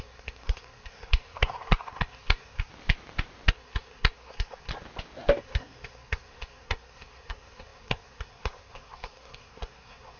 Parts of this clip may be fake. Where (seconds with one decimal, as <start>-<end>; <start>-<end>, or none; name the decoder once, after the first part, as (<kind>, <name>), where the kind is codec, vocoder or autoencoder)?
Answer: 0.0-2.7 (codec, SNAC); 3.5-4.7; 5.4-10.2